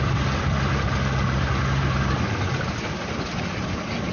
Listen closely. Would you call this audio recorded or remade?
recorded